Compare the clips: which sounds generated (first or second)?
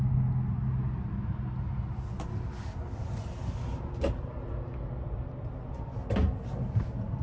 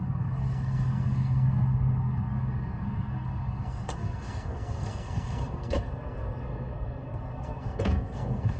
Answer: second